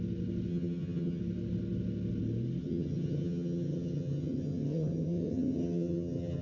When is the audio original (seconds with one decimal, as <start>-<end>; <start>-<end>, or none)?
0.0-0.5; 1.2-2.6